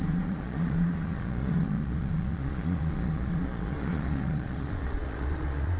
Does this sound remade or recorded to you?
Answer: remade